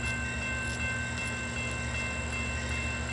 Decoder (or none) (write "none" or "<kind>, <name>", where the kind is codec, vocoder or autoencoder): none